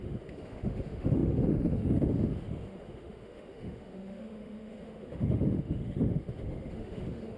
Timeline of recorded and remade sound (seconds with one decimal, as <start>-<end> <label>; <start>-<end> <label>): 0.0-7.4 remade